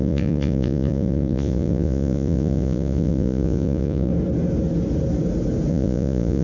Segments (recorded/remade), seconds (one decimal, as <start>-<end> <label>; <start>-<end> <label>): 0.0-4.1 remade; 4.1-5.7 recorded; 5.7-6.4 remade